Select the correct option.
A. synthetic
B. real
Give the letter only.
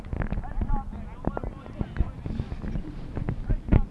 B